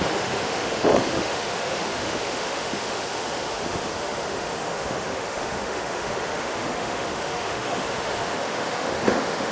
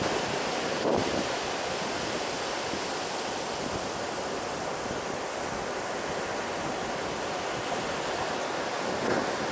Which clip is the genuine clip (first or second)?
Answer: second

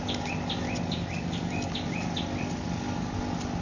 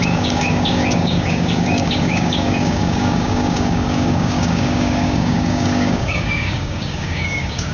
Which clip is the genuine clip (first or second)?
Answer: first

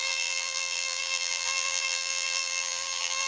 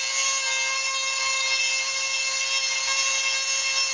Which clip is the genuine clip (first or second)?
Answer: second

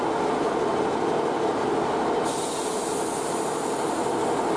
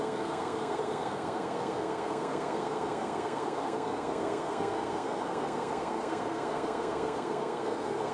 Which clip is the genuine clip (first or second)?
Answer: first